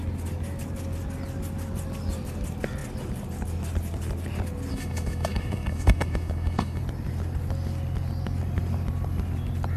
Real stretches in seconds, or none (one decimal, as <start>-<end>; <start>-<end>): 0.0-4.7; 6.8-9.8